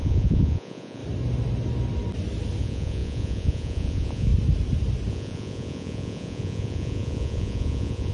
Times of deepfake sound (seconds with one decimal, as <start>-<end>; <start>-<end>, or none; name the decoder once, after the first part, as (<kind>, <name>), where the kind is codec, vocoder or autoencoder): 0.0-1.0 (vocoder, Vocos); 2.6-4.3; 5.1-8.1